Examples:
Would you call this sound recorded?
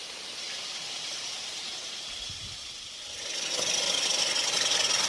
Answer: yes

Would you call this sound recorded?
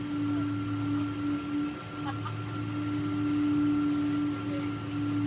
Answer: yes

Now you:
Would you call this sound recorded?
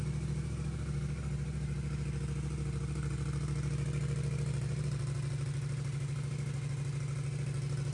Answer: yes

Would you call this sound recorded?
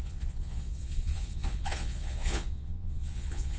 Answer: no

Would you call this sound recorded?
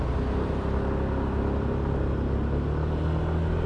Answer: yes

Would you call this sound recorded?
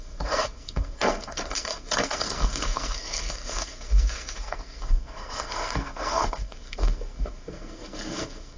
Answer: no